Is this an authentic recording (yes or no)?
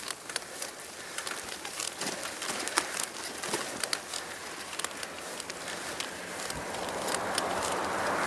yes